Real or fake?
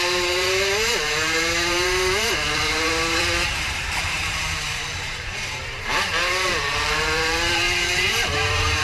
fake